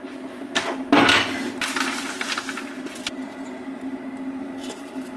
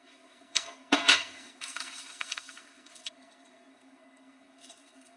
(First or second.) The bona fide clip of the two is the first